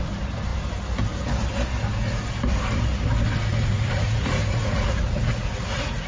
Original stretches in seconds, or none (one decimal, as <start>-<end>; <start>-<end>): 0.0-3.5

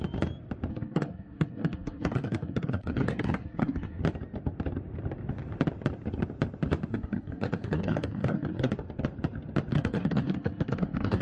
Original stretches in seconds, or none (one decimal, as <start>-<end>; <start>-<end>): 0.0-0.7; 4.0-6.9; 8.7-9.7

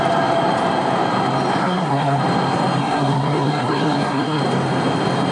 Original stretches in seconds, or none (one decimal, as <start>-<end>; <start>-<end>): 0.0-1.6; 2.2-2.8; 4.4-5.3